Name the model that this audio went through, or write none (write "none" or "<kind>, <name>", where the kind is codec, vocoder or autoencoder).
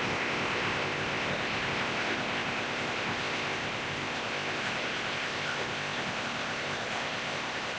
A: codec, ZipCodec